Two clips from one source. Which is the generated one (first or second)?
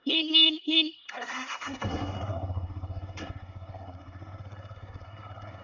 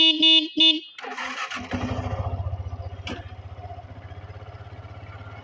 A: first